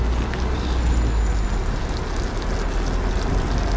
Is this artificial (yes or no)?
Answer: no